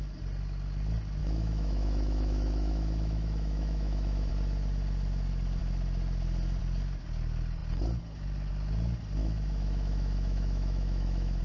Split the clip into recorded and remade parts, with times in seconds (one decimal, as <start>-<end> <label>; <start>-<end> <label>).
0.0-1.2 recorded; 1.2-4.3 remade; 4.3-9.2 recorded; 9.2-11.4 remade